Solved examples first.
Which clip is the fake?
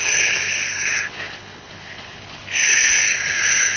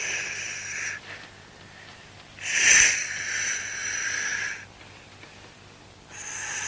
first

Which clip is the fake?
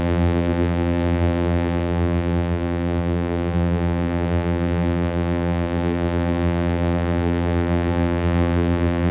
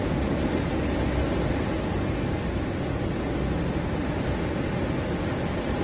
first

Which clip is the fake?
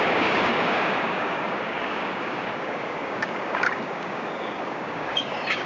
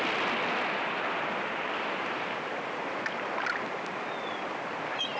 first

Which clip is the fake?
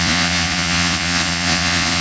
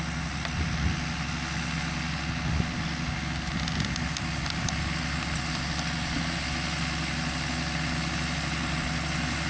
first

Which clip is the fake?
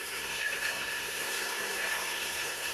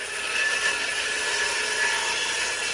first